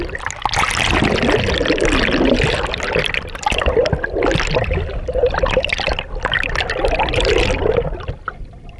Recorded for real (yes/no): yes